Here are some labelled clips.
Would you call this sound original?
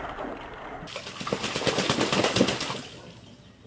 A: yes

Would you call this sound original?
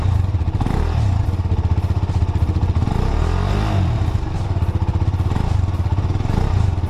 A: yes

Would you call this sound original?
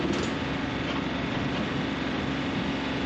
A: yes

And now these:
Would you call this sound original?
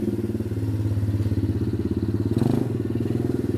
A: yes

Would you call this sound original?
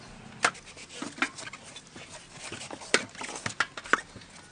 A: yes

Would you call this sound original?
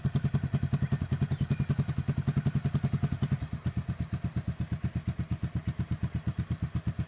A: yes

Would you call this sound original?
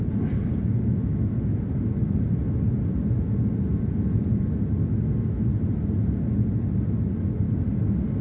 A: yes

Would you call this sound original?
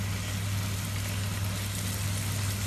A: yes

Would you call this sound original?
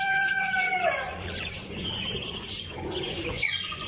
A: no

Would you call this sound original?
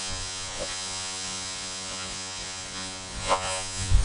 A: no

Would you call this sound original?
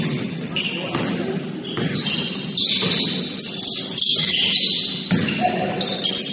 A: yes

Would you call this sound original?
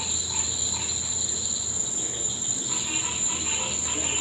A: yes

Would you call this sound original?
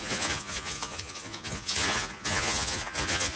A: no